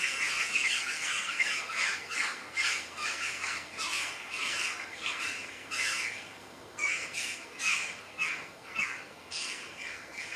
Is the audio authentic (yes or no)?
no